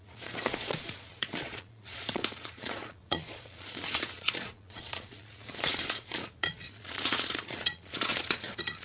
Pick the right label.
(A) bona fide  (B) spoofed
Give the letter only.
B